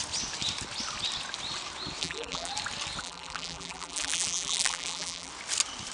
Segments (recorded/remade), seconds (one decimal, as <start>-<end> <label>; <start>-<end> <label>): 0.0-2.0 recorded; 2.0-2.5 remade; 2.5-3.0 recorded; 3.0-5.3 remade; 5.3-5.9 recorded